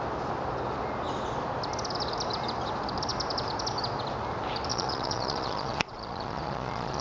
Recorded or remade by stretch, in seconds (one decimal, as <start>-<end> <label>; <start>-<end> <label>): 0.0-4.7 recorded; 4.7-7.0 remade